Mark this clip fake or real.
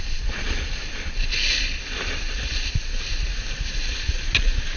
real